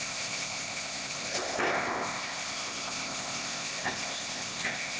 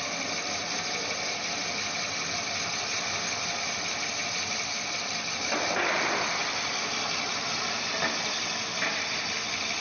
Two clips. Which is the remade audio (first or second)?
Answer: first